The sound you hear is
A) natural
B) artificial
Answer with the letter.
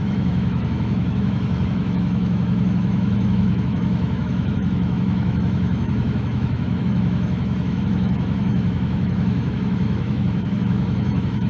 B